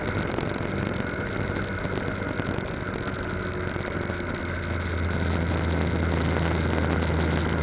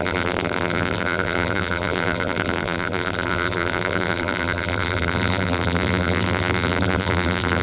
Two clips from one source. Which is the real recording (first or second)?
first